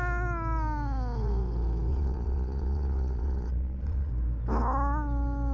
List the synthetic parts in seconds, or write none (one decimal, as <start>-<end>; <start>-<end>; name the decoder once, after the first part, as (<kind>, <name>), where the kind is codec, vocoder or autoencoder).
1.9-4.1 (vocoder, Vocos)